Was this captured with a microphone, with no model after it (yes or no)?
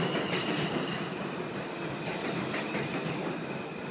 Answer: no